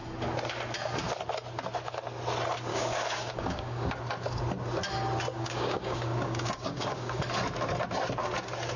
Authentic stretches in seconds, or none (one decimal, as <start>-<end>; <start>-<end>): 0.0-2.7; 3.9-5.3; 7.2-8.8